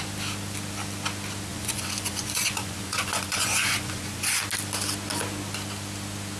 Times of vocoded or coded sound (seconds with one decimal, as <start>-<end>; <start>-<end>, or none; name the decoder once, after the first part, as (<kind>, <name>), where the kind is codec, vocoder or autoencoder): 1.5-4.4 (vocoder, Vocos)